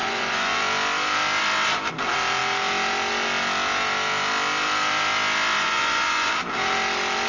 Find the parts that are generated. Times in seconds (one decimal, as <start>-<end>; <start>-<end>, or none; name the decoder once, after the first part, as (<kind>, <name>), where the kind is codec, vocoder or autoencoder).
0.0-0.6 (vocoder, Vocos); 5.6-6.3